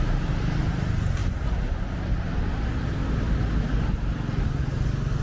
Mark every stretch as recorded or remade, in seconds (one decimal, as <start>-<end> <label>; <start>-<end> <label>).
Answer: 0.0-5.2 recorded